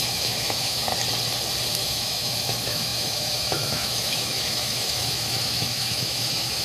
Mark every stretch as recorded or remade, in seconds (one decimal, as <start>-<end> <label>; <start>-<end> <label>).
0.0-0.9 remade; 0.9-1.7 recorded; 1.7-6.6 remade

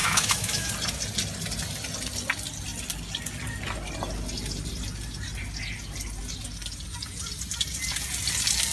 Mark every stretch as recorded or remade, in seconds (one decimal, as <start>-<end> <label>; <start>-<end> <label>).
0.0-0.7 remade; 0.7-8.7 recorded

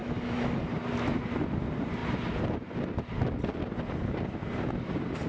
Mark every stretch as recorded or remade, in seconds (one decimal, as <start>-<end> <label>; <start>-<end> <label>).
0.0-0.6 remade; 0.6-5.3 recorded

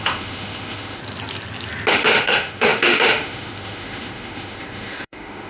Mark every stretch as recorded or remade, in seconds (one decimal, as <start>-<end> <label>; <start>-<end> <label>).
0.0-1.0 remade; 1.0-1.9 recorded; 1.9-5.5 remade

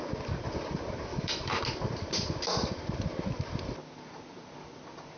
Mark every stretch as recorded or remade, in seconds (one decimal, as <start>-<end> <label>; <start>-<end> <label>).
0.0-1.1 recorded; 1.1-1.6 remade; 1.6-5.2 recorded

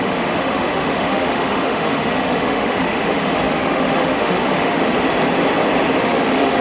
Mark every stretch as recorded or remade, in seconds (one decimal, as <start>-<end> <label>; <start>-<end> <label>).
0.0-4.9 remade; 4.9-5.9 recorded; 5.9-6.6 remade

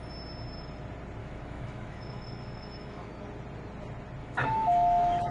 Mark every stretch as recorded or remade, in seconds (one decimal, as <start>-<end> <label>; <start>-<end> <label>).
0.0-1.2 recorded; 1.2-3.1 remade; 3.1-4.2 recorded; 4.2-5.3 remade